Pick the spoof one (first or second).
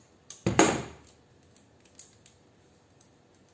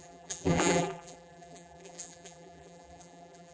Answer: second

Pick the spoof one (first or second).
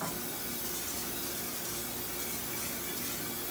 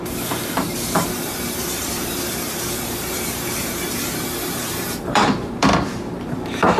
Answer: second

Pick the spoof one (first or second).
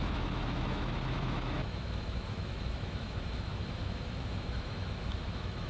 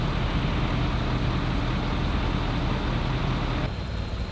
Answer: first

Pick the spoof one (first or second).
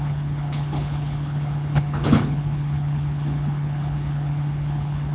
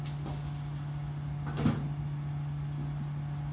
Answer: first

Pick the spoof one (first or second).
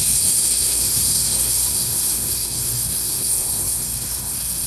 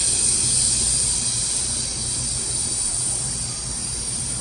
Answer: first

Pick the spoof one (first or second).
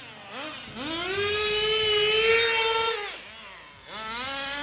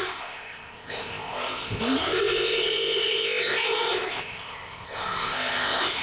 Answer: second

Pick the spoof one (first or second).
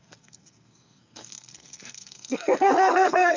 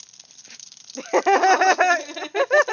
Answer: first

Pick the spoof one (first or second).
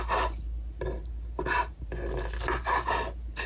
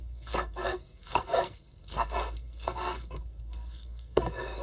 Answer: second